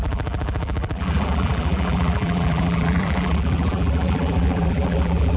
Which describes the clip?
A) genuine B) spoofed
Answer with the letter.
B